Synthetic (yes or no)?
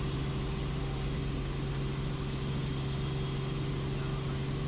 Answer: no